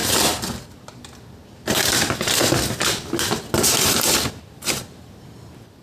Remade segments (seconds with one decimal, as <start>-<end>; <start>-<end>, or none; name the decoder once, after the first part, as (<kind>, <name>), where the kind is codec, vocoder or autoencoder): none

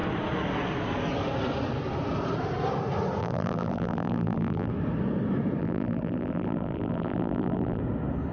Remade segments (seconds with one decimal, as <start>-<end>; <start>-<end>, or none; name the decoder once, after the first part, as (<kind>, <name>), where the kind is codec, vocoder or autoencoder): 3.2-4.7 (vocoder, BigVGAN v2); 5.6-7.8

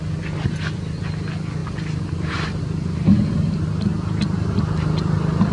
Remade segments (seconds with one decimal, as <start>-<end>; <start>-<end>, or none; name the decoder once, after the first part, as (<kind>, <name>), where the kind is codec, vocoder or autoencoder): 1.6-3.5 (vocoder, BigVGAN v2)

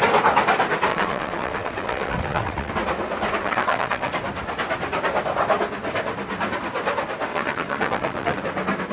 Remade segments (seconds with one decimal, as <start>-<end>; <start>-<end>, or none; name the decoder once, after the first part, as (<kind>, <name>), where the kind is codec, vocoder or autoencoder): 0.9-2.7 (vocoder, WaveNeXt); 3.4-4.1; 7.3-8.4

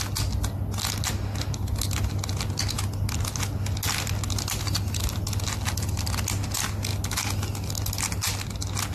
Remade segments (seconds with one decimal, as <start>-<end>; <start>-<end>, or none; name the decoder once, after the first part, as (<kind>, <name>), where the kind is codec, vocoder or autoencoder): none

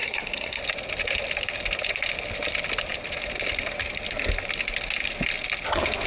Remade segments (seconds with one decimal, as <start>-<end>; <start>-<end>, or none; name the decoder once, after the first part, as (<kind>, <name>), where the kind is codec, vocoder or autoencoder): 0.0-0.6 (codec, SNAC)

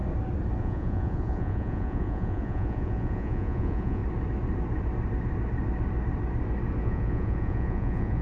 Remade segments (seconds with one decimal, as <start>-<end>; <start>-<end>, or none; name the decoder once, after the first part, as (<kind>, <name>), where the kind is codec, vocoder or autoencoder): 0.6-4.0 (vocoder, Vocos); 6.8-8.2